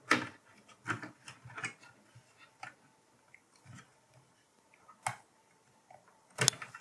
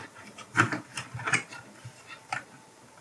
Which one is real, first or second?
first